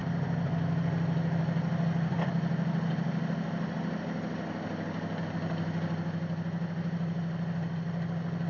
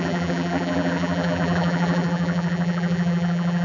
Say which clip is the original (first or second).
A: first